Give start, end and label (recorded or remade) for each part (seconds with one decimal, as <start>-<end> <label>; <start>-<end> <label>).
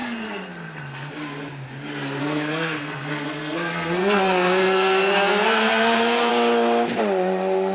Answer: 0.0-1.1 remade; 1.1-2.2 recorded; 2.2-6.3 remade; 6.3-7.7 recorded